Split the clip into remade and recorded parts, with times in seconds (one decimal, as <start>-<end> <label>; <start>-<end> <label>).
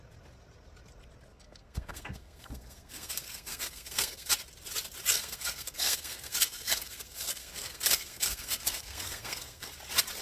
0.0-1.3 recorded; 1.3-4.3 remade; 4.3-5.1 recorded; 5.1-9.7 remade; 9.7-10.2 recorded